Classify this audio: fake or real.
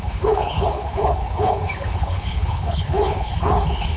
fake